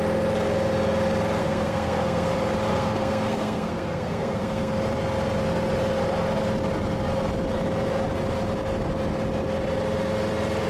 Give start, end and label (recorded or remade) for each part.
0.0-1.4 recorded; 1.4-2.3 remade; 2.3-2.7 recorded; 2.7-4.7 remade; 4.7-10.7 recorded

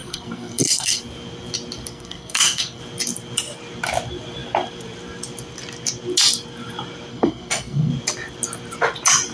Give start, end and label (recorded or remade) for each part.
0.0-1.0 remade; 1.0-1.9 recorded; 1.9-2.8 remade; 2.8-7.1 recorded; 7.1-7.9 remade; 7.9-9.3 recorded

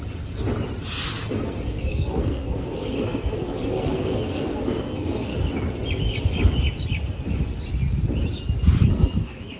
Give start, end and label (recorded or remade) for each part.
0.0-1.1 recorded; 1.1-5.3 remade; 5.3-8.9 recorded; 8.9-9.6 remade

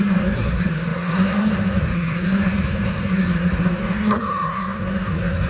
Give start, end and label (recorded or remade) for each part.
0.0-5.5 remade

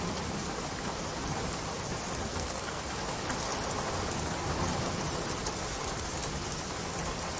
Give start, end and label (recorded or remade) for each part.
0.0-2.3 recorded; 2.3-2.8 remade; 2.8-7.4 recorded

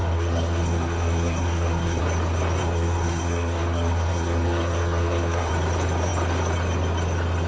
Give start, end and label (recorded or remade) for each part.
0.0-2.0 remade; 2.0-2.6 recorded; 2.6-5.5 remade; 5.5-7.5 recorded